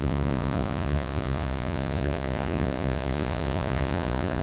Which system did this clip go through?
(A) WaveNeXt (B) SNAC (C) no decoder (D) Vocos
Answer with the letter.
D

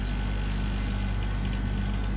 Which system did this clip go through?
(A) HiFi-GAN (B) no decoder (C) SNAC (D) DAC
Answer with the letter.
B